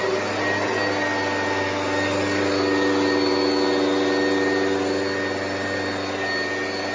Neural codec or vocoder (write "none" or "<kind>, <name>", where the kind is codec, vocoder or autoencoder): none